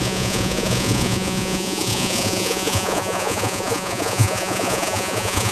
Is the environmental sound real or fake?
fake